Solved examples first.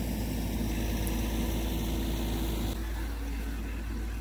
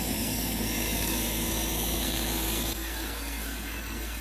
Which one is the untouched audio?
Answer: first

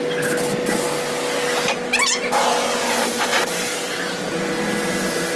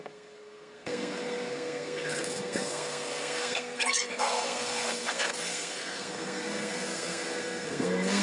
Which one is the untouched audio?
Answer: first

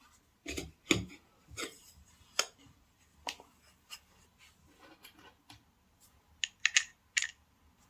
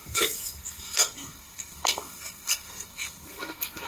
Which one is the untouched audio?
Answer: first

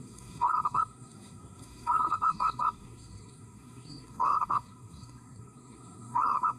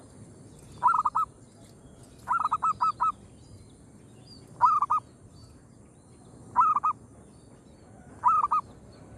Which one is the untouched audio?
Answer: second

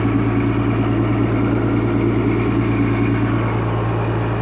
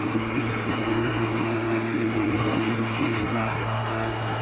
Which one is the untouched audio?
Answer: first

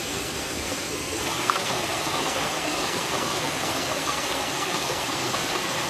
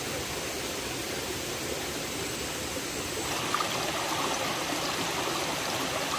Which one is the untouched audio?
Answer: second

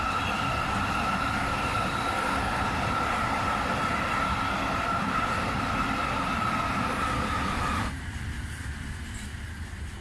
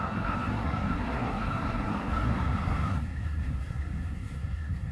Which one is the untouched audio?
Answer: first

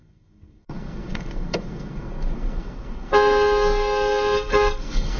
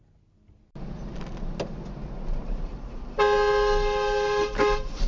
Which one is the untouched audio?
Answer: second